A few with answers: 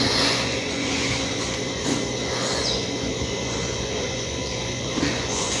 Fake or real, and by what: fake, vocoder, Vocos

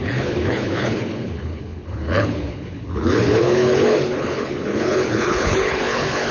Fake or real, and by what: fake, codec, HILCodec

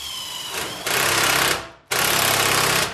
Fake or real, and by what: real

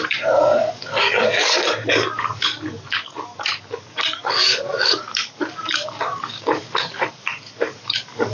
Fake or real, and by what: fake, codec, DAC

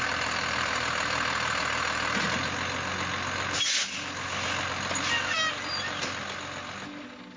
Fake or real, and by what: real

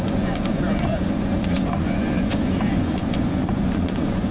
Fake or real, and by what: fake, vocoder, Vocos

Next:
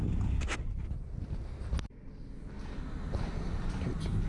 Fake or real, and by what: real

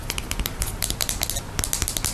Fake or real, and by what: real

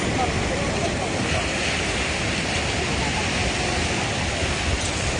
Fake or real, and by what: real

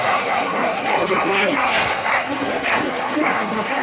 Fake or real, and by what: fake, codec, SNAC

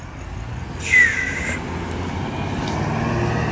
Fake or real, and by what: real